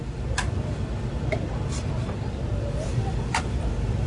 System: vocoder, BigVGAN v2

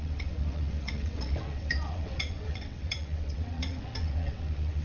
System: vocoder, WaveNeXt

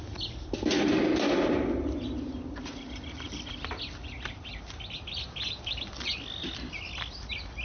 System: none